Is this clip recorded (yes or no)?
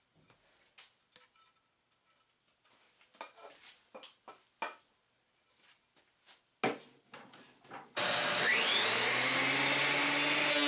yes